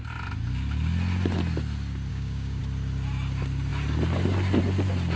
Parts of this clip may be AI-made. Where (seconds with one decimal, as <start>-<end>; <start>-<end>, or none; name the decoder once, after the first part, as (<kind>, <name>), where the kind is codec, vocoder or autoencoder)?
2.1-2.6 (codec, DAC)